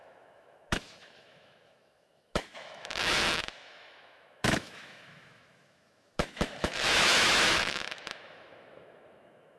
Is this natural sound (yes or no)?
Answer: no